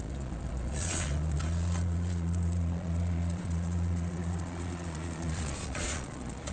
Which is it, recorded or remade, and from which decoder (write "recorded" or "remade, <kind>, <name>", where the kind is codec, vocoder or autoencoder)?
remade, vocoder, Vocos